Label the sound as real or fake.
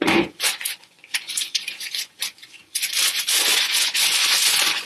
fake